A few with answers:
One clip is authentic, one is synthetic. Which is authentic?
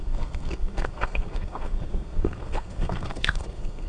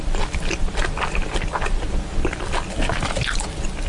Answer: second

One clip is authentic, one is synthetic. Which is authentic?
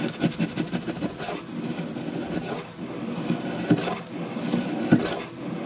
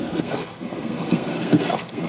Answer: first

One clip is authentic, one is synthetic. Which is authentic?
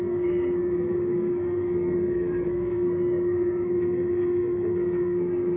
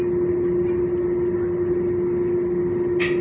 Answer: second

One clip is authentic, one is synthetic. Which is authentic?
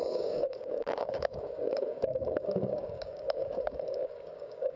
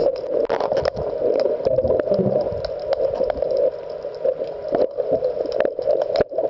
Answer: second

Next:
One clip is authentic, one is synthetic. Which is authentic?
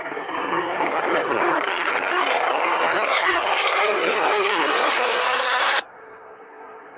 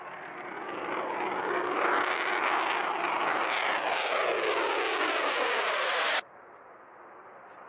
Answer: second